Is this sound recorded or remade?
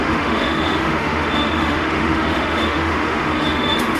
remade